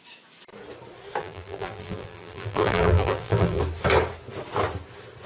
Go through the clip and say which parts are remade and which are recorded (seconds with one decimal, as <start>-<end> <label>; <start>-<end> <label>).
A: 0.0-1.2 recorded; 1.2-3.6 remade; 3.6-5.3 recorded